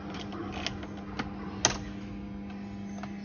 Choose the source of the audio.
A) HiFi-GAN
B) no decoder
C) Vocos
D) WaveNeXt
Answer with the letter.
B